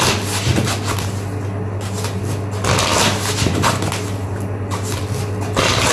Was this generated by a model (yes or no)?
no